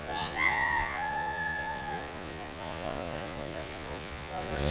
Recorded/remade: remade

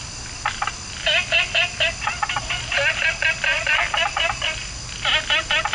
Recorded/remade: recorded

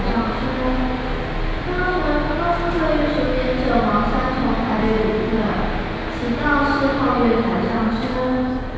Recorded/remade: recorded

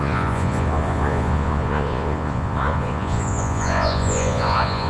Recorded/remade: remade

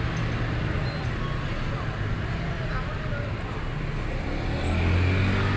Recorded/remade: recorded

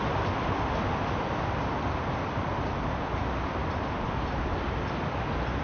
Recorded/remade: recorded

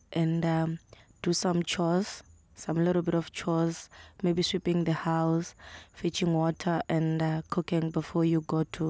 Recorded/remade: recorded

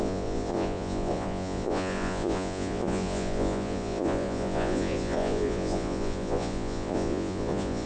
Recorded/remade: remade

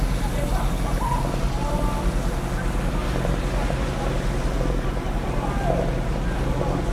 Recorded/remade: recorded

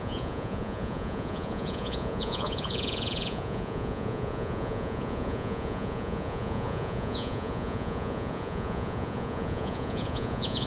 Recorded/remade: remade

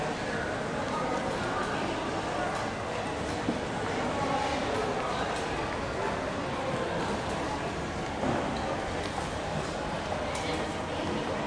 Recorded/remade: recorded